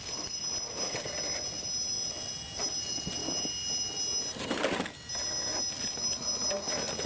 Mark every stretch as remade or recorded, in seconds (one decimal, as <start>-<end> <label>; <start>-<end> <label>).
0.0-7.1 recorded